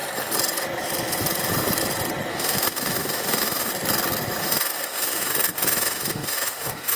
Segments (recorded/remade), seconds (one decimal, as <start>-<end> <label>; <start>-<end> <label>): 0.0-2.3 recorded; 2.3-3.7 remade; 3.7-4.4 recorded; 4.4-7.0 remade